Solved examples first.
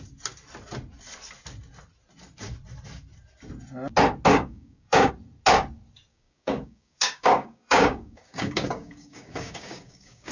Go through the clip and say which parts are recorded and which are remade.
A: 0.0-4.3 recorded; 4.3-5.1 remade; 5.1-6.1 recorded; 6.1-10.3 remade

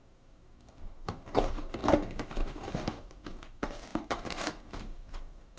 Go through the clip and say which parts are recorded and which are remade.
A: 0.0-5.6 remade

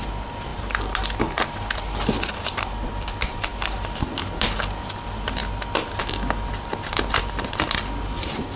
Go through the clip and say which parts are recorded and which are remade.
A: 0.0-8.6 recorded

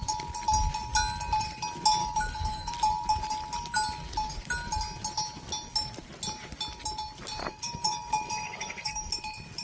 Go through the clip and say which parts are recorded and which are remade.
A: 0.0-2.0 recorded; 2.0-2.7 remade; 2.7-7.4 recorded; 7.4-9.1 remade; 9.1-9.6 recorded

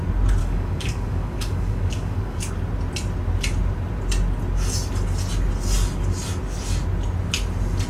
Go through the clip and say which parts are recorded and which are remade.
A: 0.0-0.4 recorded; 0.4-2.5 remade; 2.5-7.9 recorded

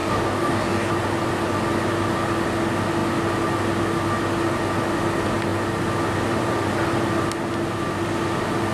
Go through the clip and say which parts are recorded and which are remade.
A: 0.0-0.9 remade; 0.9-8.7 recorded